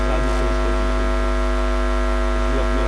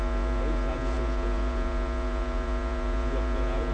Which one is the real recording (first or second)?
first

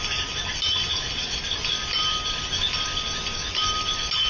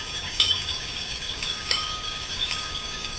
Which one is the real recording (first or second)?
first